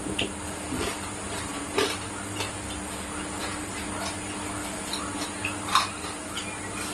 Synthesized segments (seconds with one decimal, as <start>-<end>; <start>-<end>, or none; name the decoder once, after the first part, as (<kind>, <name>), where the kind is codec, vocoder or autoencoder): none